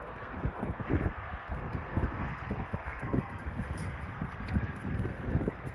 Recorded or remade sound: remade